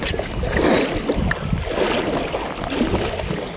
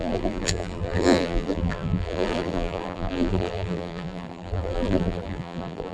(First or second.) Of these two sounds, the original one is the first